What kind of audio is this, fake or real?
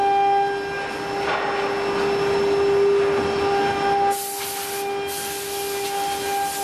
real